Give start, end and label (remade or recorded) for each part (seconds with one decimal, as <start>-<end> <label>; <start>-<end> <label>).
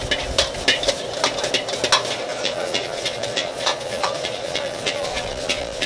0.0-2.3 recorded; 2.3-5.9 remade